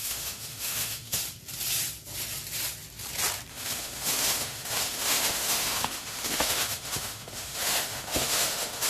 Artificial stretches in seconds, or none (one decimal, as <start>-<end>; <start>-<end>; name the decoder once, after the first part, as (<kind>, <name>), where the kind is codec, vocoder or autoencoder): 0.0-1.2 (autoencoder, DAC-VAE); 3.5-8.9